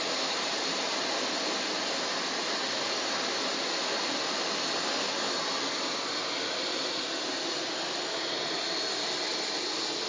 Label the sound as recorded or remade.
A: recorded